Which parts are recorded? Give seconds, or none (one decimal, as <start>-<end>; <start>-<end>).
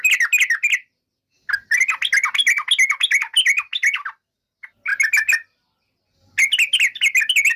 0.0-7.6